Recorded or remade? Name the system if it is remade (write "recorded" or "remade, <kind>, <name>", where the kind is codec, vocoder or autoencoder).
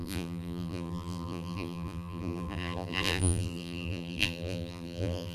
remade, vocoder, BigVGAN v2